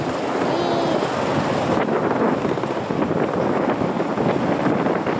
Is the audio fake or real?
real